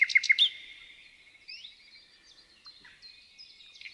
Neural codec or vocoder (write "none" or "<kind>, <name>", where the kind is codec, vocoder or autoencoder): none